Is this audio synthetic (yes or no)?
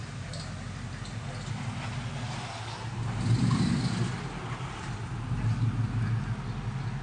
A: no